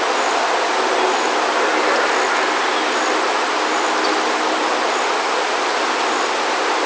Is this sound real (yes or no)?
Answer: yes